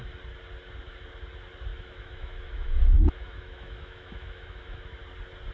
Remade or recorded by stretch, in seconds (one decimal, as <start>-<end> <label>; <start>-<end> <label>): 0.0-1.7 recorded; 1.7-5.0 remade; 5.0-5.5 recorded